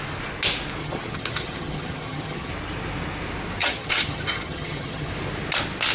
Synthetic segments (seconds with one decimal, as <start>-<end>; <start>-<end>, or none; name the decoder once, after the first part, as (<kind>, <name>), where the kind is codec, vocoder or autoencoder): 0.8-2.5 (vocoder, HiFi-GAN); 3.6-5.1